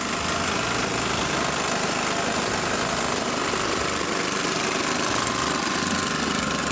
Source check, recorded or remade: recorded